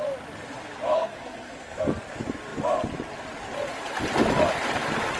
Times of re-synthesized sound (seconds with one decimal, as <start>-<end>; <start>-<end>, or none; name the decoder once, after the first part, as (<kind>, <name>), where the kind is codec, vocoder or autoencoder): 0.9-1.8 (codec, SNAC)